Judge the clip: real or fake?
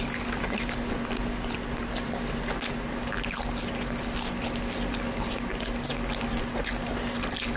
real